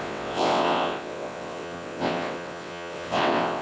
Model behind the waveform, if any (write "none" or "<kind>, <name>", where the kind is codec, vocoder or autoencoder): vocoder, WaveNeXt